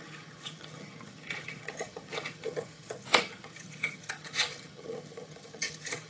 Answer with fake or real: fake